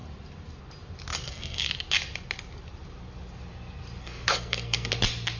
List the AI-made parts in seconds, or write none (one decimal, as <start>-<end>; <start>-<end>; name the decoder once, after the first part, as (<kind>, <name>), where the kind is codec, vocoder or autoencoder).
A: 1.1-1.7 (codec, SNAC); 4.0-4.9